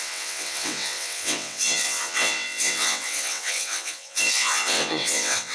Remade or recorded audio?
remade